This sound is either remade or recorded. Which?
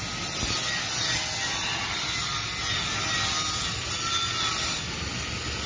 recorded